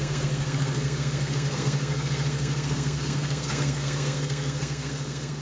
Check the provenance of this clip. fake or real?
fake